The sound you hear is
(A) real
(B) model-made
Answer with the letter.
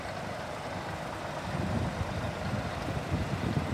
B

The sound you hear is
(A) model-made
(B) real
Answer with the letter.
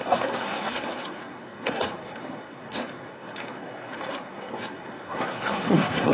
A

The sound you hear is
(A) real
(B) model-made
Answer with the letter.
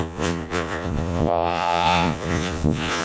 B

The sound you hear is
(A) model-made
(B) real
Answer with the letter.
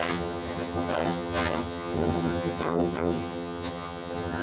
A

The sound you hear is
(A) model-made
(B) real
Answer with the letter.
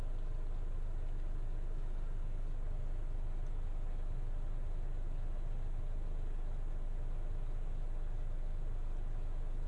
B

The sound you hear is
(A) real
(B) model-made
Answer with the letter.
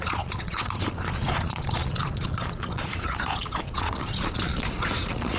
B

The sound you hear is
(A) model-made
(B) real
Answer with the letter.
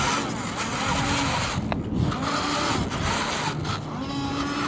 B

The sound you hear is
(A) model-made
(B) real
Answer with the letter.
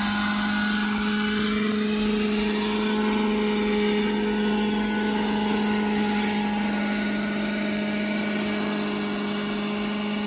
B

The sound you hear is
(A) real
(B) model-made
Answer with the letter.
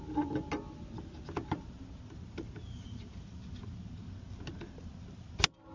A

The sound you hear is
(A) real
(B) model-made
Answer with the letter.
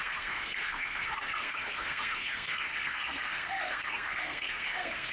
B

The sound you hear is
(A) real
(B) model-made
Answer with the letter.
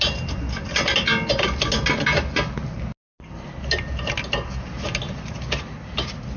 A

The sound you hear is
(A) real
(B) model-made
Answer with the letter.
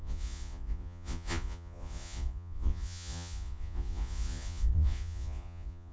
B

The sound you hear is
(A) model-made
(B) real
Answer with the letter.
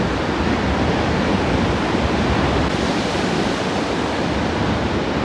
B